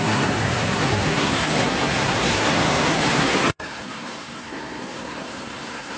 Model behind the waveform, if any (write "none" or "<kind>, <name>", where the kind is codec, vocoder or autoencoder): codec, SNAC